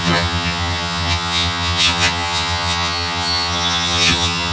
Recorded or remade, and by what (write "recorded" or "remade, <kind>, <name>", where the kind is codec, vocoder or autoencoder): remade, vocoder, HiFi-GAN